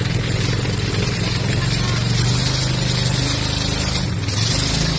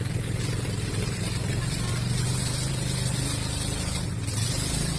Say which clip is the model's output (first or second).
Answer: second